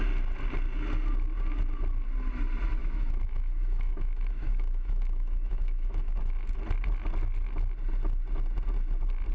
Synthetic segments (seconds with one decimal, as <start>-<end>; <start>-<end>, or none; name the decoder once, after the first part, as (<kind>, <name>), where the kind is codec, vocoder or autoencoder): 2.8-6.2 (autoencoder, DAC-VAE)

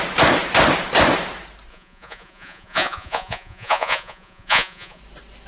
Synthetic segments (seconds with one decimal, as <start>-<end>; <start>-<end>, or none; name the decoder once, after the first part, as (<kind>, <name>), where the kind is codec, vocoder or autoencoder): 1.7-5.0 (vocoder, Vocos)